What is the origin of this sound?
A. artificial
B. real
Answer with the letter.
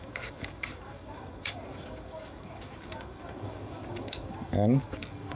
A